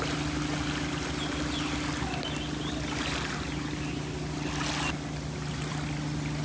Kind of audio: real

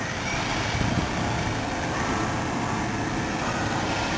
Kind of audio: fake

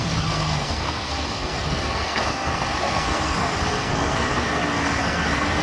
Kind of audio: fake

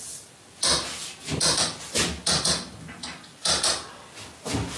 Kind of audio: real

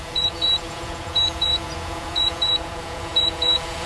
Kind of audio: fake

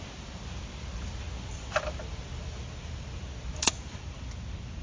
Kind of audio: real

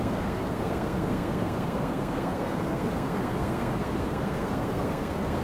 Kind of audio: fake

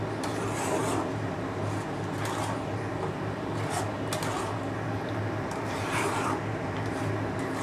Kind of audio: real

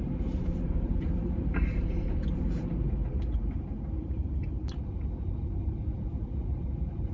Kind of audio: fake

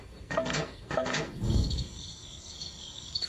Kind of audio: fake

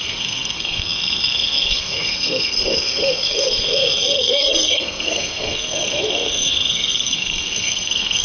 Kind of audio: fake